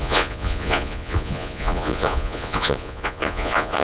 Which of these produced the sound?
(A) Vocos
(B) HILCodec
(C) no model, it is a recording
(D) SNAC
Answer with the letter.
A